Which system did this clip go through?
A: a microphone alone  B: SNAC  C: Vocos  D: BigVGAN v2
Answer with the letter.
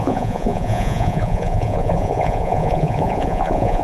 C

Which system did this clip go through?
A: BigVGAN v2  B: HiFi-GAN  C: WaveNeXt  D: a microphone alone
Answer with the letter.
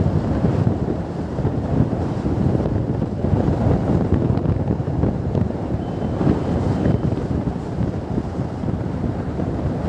A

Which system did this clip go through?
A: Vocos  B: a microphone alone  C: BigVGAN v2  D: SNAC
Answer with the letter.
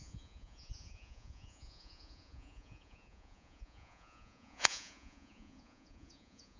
A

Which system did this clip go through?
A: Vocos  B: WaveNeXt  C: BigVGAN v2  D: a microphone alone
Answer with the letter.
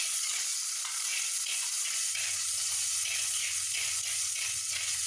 A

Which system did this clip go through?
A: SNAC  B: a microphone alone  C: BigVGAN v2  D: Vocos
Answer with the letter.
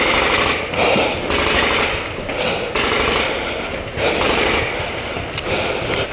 B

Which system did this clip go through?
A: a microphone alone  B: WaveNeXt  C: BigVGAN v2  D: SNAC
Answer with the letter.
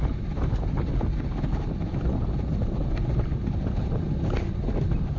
A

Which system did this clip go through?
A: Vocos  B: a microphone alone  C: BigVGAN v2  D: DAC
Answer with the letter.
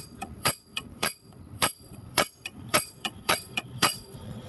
A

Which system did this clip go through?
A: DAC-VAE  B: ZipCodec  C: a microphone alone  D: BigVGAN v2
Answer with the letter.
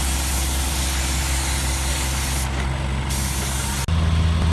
C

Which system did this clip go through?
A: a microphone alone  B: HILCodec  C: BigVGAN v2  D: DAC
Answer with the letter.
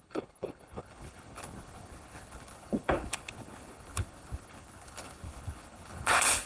B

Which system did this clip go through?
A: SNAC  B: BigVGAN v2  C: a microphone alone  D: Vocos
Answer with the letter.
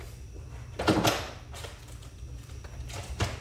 C